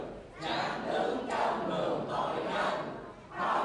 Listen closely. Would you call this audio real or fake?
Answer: real